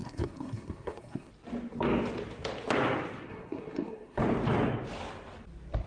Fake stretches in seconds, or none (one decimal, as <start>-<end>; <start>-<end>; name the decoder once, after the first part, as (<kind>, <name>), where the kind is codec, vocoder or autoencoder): 0.0-1.3 (codec, SNAC); 3.3-4.2